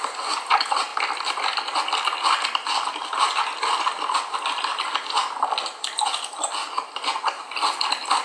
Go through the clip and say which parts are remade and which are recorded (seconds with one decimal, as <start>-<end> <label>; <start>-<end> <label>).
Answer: 0.0-6.6 recorded; 6.6-7.4 remade; 7.4-8.2 recorded